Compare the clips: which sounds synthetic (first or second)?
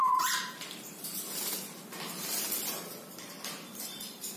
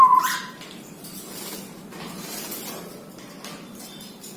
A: first